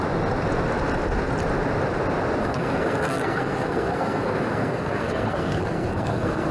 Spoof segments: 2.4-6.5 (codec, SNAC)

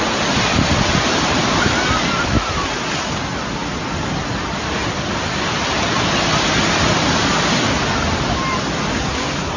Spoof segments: none

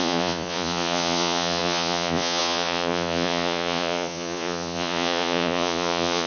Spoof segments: 0.0-6.3 (vocoder, Vocos)

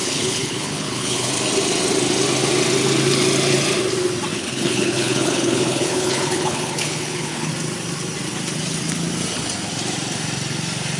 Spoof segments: 0.0-1.3 (codec, HILCodec); 4.3-7.5

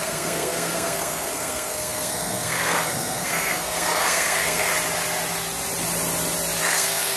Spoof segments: 0.0-4.7 (codec, SNAC); 6.6-7.2

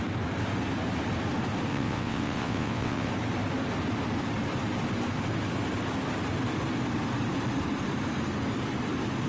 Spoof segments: 1.7-3.1 (vocoder, WaveNeXt)

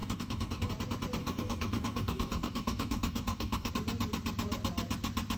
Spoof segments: 0.0-0.7 (codec, DAC); 1.2-3.7